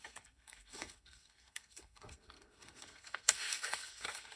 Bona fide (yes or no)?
no